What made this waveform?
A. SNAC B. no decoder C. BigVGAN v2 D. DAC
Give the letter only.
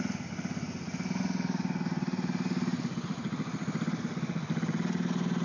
B